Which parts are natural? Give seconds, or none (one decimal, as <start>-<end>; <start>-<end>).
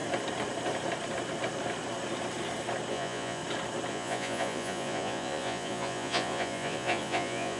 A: 0.0-2.9; 3.4-3.9